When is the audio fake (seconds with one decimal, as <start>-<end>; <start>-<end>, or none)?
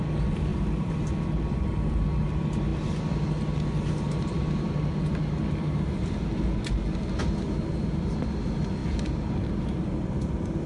0.5-1.1